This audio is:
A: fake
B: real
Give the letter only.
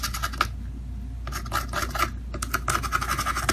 B